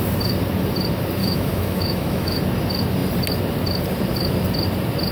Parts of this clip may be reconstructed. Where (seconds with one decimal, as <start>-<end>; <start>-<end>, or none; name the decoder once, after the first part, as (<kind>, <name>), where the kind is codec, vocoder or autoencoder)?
1.2-2.4 (autoencoder, DAC-VAE)